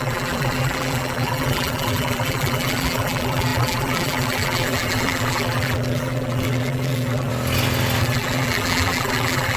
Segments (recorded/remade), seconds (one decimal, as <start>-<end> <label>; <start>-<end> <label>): 0.0-7.3 remade; 7.3-8.0 recorded; 8.0-9.6 remade